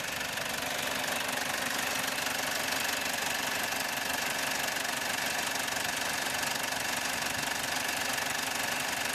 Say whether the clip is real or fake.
real